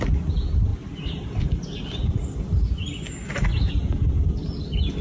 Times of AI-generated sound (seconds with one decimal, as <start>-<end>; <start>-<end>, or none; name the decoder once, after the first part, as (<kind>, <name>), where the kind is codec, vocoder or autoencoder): none